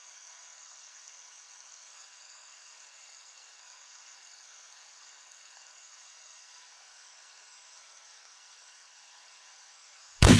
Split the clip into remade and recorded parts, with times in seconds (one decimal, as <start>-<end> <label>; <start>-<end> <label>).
0.0-10.4 remade